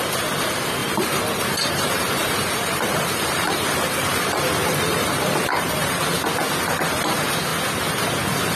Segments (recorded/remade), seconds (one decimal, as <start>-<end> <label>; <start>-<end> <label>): 0.0-0.8 recorded; 0.8-6.0 remade; 6.0-8.6 recorded